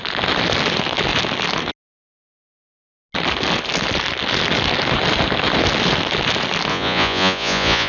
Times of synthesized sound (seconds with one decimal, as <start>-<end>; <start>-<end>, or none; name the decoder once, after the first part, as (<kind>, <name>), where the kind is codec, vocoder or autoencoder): 6.7-7.9 (vocoder, Vocos)

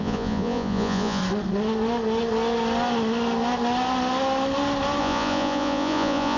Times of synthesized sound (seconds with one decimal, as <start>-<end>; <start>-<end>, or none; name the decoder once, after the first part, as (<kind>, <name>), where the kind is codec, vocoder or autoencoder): 0.0-1.2 (vocoder, Vocos); 5.0-6.4